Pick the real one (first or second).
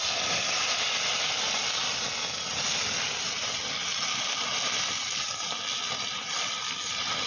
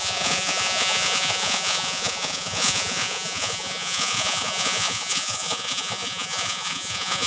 first